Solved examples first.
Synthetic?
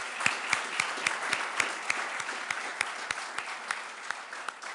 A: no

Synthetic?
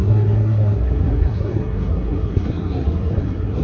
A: yes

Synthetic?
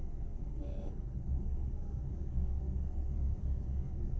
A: yes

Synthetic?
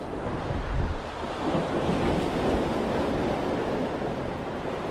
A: no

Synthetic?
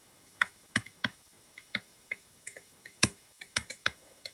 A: yes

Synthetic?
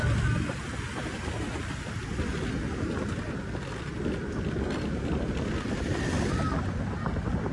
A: no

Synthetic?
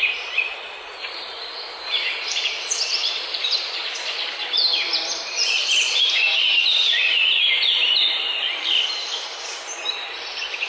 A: yes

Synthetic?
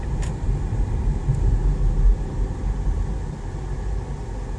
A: no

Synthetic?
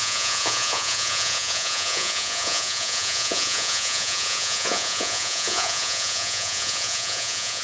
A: yes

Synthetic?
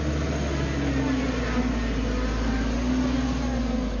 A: no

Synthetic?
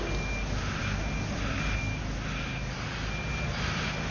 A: no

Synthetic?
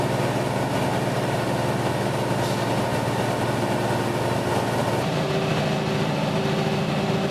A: no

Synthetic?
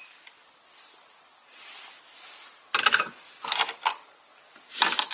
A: no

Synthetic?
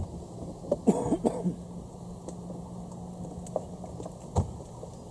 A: no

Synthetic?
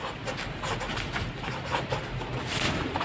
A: no